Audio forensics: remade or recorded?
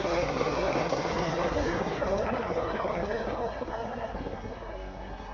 remade